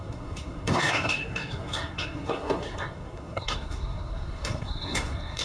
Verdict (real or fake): fake